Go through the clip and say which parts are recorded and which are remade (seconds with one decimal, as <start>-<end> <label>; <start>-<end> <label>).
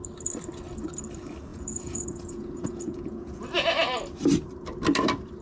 0.0-1.5 recorded; 1.5-3.4 remade; 3.4-5.4 recorded